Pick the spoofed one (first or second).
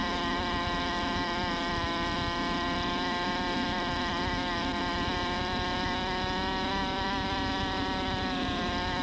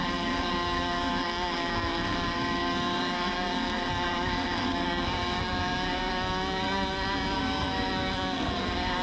second